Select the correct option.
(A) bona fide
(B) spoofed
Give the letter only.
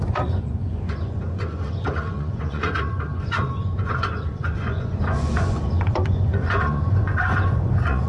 B